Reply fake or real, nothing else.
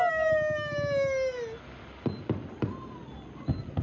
real